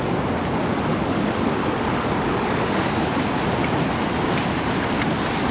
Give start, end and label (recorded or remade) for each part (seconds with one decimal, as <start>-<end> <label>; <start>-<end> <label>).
0.0-0.9 recorded; 0.9-3.1 remade; 3.1-5.5 recorded